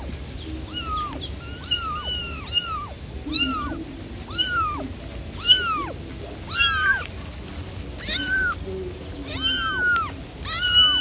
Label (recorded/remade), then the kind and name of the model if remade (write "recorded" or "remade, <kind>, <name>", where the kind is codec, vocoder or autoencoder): recorded